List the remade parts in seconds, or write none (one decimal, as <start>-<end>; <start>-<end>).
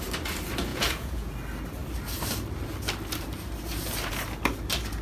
0.7-1.3